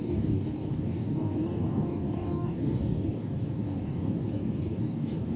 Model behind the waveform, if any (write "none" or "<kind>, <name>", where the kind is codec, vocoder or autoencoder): codec, DAC